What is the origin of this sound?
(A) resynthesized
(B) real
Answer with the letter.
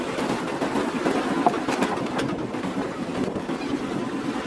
B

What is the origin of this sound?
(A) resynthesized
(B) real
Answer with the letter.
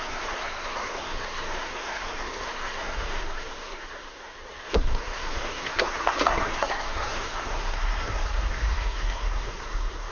A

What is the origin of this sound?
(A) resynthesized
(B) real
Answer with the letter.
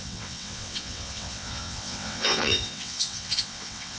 A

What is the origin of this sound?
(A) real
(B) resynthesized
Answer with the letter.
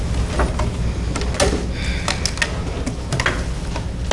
A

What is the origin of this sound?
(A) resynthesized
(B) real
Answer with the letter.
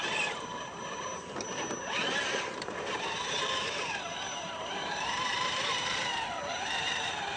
A